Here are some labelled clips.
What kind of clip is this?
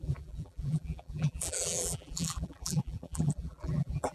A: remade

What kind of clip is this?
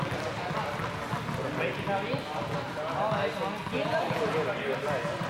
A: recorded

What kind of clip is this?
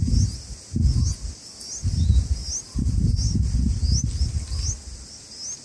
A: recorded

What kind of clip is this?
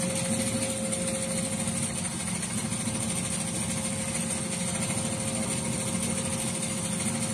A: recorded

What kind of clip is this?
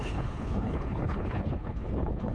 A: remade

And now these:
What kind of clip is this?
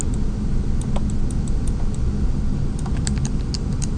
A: recorded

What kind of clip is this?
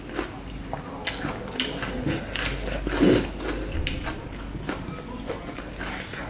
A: recorded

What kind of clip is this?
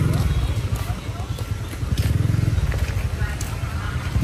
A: recorded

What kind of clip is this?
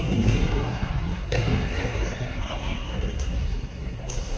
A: remade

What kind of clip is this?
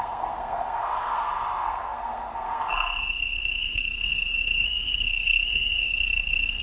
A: remade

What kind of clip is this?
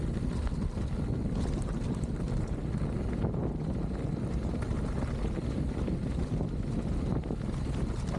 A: recorded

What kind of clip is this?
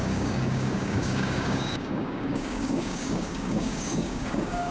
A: remade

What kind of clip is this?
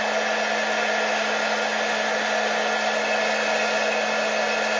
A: recorded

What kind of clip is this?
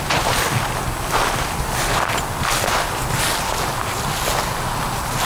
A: recorded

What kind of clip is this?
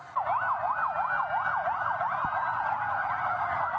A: recorded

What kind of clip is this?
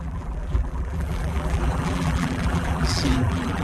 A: remade